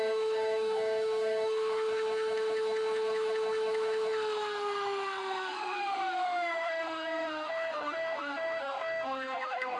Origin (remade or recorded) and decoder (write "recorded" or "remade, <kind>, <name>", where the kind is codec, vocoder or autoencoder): remade, autoencoder, DAC-VAE